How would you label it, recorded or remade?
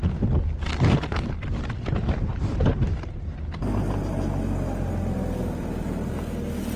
recorded